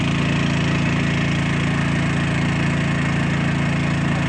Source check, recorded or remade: recorded